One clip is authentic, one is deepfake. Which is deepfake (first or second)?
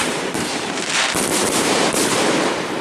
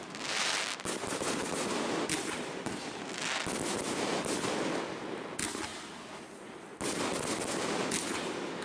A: first